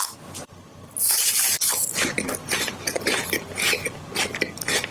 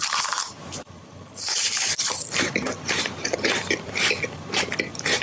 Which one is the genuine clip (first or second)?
first